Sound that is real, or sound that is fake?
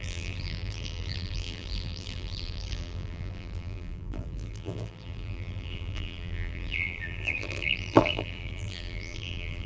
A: fake